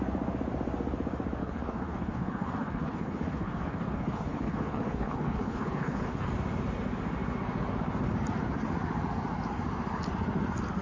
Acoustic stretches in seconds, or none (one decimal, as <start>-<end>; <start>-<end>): 0.0-1.4; 6.3-10.8